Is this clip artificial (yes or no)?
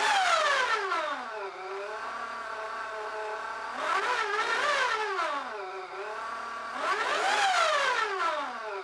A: no